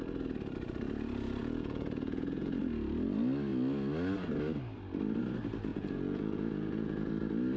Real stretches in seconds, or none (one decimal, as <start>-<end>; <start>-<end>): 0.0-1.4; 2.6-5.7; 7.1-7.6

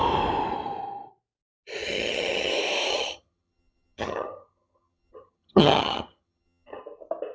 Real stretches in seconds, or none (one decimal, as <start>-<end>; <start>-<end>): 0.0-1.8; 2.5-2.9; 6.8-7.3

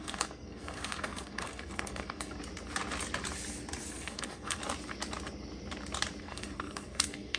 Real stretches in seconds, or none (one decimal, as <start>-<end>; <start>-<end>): 2.4-3.9; 4.6-6.2

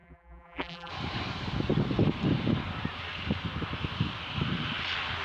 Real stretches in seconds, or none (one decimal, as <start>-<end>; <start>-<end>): 0.9-5.2

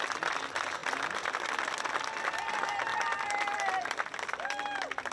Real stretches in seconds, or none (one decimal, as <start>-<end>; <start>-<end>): 0.0-5.1

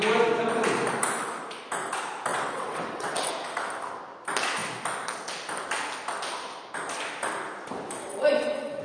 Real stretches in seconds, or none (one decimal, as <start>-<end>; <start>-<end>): 0.0-2.3; 3.3-8.1